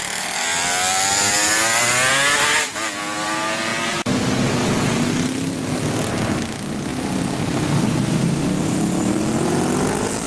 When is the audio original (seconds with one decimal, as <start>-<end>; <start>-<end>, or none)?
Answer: 0.0-10.3